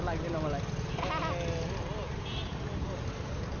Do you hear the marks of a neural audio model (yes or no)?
no